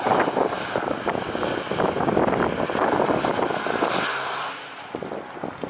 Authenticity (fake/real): real